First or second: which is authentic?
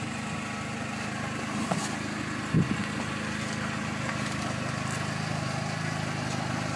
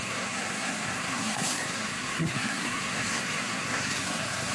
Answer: first